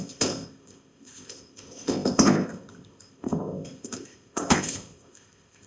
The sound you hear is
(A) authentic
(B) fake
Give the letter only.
B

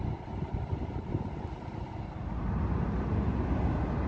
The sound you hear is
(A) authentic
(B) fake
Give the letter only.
A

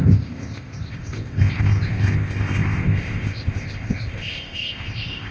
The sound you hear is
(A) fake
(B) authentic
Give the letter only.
A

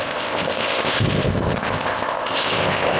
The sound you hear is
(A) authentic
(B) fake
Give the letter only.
B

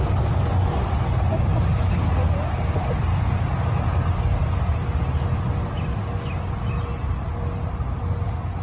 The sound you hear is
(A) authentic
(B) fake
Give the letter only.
A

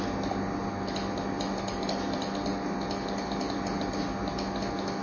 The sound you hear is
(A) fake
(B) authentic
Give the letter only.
B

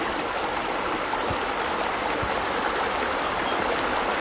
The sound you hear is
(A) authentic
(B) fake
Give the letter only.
A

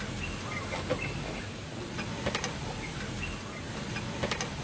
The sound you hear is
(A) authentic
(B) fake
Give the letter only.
A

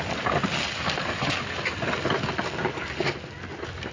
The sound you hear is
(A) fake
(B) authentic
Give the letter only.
B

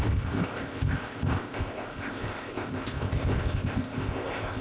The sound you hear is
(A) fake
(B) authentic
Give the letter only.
A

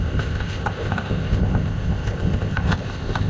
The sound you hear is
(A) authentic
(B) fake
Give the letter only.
B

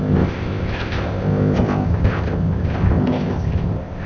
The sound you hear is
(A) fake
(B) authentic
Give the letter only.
A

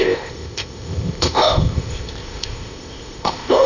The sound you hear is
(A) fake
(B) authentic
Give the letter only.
A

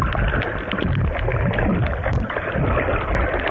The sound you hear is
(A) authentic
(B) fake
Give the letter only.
A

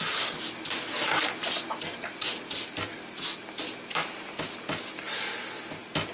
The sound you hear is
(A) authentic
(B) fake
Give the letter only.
A